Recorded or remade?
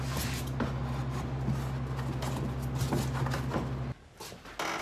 recorded